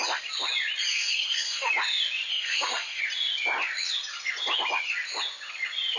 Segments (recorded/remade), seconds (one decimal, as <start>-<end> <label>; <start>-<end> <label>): 0.0-0.9 recorded; 0.9-1.7 remade; 1.7-2.3 recorded; 2.3-3.0 remade; 3.0-6.0 recorded